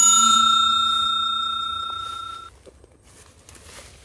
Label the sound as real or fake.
real